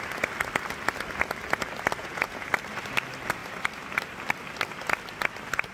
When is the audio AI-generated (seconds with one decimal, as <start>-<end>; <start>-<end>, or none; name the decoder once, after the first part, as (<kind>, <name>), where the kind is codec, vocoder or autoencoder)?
2.0-2.5 (vocoder, Vocos)